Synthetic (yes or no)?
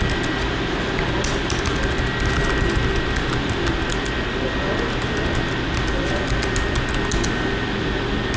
no